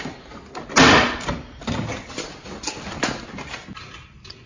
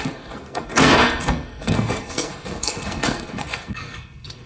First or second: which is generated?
second